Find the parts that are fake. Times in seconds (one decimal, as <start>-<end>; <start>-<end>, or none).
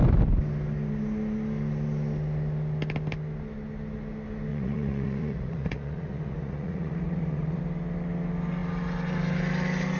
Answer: 4.5-7.6